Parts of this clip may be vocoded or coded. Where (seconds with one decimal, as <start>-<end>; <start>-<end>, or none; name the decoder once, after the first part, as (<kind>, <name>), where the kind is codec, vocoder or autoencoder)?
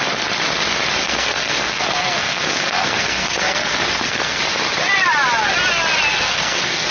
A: 1.0-4.4 (codec, SNAC); 6.1-6.9